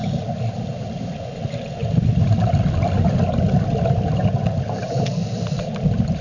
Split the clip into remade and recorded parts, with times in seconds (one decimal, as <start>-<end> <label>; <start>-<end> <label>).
0.0-1.8 recorded; 1.8-2.5 remade; 2.5-6.2 recorded